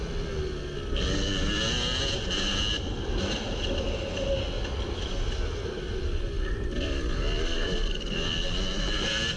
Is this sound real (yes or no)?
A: yes